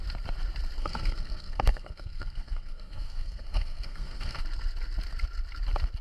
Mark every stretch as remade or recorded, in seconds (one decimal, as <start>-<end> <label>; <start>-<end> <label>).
0.0-0.8 recorded; 0.8-4.4 remade; 4.4-6.0 recorded